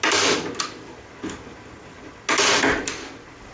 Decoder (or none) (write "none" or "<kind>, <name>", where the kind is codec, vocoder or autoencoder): none